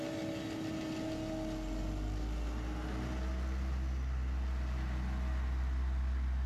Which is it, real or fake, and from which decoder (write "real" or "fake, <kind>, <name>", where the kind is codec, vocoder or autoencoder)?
real